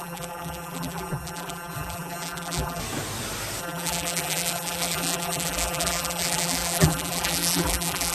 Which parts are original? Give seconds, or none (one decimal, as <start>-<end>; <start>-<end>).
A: 2.8-3.6